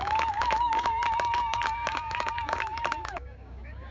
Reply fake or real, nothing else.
fake